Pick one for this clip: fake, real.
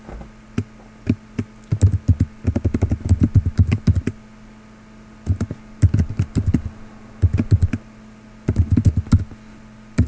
real